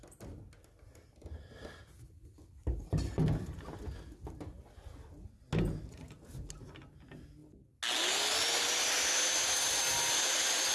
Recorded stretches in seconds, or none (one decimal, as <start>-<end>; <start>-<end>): 0.0-10.7